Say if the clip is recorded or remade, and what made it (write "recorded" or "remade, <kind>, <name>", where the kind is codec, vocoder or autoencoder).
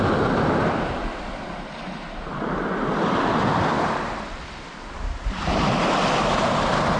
recorded